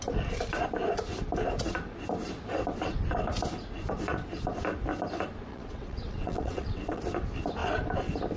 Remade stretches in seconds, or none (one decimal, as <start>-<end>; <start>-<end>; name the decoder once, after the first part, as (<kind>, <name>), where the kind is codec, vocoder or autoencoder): 5.5-7.0 (vocoder, WaveNeXt)